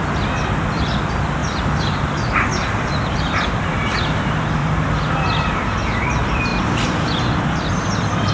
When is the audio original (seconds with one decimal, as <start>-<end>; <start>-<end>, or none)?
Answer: 0.0-1.4; 4.1-4.6; 6.0-6.5; 7.7-8.3